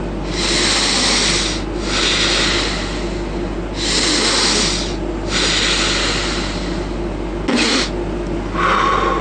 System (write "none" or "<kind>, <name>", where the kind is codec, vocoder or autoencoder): none